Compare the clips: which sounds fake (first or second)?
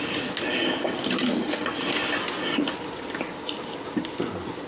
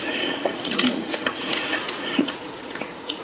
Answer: second